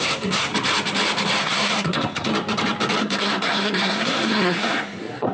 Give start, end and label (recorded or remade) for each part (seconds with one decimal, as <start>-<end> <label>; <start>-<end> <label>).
0.0-0.5 remade; 0.5-1.4 recorded; 1.4-2.3 remade; 2.3-3.0 recorded; 3.0-5.3 remade